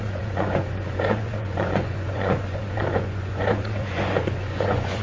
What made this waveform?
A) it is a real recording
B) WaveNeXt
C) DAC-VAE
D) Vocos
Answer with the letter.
D